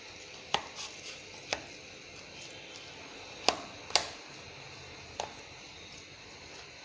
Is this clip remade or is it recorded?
recorded